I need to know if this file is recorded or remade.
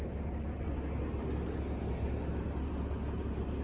recorded